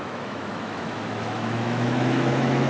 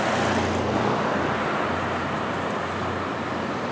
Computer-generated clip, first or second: first